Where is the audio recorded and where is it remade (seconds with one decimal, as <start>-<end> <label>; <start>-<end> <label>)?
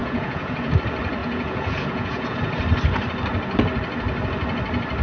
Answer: 0.0-0.7 remade; 0.7-1.2 recorded; 1.2-2.4 remade; 2.4-5.0 recorded